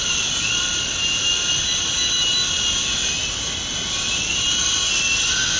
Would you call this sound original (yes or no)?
yes